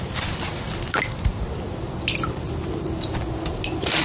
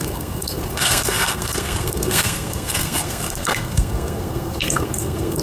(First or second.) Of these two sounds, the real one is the first